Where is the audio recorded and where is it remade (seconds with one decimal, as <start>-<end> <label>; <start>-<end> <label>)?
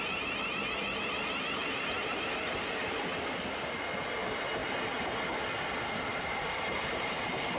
0.0-1.6 recorded; 1.6-2.9 remade; 2.9-6.1 recorded; 6.1-7.6 remade